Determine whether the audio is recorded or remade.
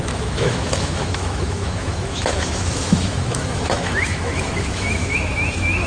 remade